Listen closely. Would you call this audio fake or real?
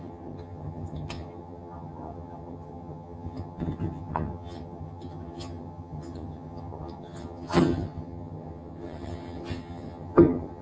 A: fake